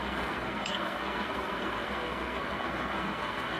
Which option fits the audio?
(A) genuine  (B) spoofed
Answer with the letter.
B